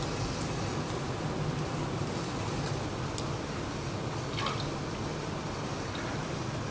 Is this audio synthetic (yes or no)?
no